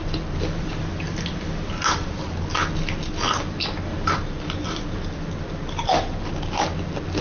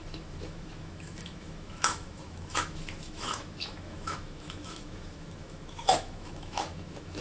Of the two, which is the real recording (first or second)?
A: first